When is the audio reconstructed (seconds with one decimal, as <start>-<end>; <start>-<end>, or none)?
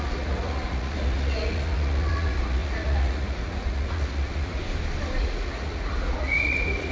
0.0-4.6; 5.2-6.9